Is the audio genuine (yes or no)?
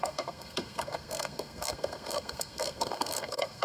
no